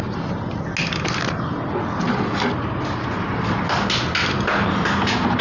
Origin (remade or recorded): recorded